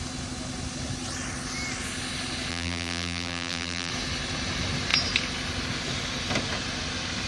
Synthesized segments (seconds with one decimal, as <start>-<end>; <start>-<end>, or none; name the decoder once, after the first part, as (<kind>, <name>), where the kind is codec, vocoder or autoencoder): 2.5-3.9 (vocoder, BigVGAN v2)